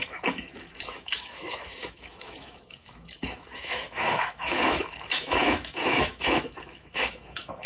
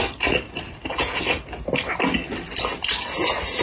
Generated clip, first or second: first